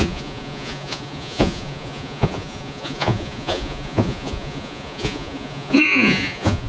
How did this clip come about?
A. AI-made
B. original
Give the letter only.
A